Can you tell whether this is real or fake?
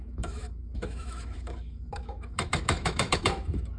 fake